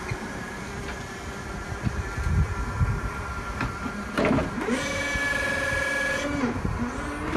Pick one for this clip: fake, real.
real